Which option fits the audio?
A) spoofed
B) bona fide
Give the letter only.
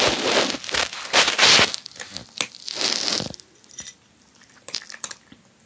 B